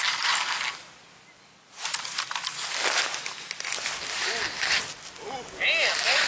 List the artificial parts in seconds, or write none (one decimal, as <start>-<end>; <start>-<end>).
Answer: none